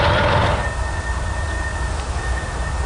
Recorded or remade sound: recorded